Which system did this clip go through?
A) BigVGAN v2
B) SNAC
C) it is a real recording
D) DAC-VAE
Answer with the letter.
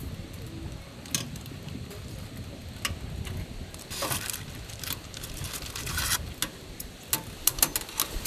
C